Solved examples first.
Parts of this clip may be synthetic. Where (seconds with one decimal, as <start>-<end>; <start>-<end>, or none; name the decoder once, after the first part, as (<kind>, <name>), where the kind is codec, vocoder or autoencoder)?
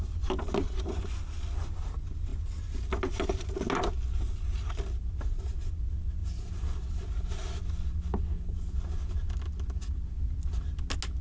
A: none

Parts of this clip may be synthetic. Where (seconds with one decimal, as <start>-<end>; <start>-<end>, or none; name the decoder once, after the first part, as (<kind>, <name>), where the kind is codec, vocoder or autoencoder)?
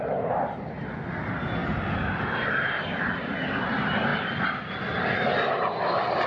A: none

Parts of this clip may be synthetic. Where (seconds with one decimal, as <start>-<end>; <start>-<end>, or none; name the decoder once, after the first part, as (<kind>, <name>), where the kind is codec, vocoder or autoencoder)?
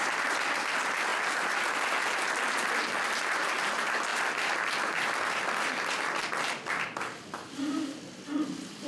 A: none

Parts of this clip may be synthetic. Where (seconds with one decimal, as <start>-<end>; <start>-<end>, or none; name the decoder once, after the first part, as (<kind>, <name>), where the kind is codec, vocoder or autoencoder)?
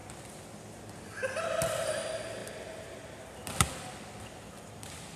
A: none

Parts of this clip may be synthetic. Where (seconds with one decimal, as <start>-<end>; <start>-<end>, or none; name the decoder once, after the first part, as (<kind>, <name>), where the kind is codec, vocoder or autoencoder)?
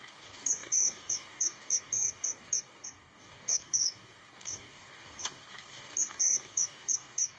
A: 0.0-7.4 (codec, DAC)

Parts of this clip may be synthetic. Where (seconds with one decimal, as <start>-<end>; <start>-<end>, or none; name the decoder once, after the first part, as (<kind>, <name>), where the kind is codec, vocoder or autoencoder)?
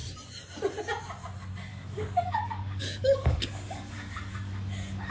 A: 1.7-5.1 (codec, DAC)